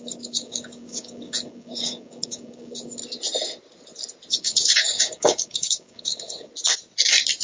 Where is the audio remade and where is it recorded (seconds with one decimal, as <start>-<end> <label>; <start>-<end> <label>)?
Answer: 0.0-3.0 remade; 3.0-4.3 recorded; 4.3-6.5 remade; 6.5-7.4 recorded